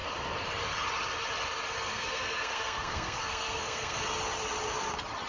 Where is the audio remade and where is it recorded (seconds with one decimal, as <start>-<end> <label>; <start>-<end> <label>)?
0.0-1.9 recorded; 1.9-4.0 remade; 4.0-5.3 recorded